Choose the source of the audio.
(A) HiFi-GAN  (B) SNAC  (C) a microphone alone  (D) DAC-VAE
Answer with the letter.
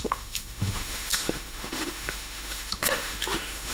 D